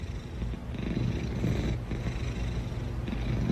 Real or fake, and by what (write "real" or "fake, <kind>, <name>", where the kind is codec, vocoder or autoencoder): real